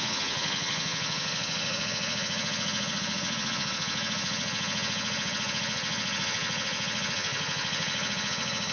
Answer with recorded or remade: remade